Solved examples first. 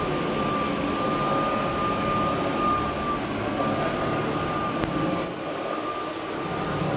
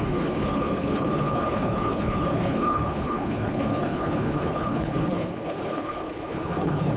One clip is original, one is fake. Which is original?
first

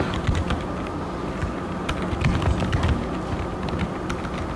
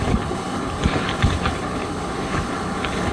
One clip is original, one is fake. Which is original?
first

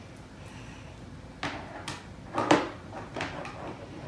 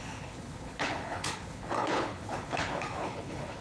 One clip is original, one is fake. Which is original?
first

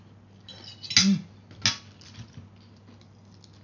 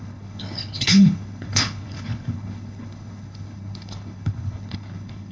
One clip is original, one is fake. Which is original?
first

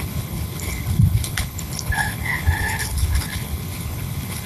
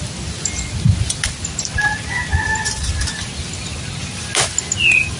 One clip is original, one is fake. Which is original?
second